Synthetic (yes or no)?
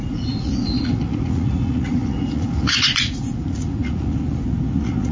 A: yes